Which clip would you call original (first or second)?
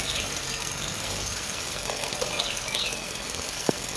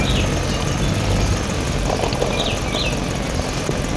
second